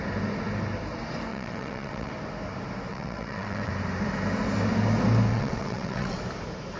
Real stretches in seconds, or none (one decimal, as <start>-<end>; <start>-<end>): 0.0-1.3; 2.1-2.9; 3.7-5.3; 6.2-6.8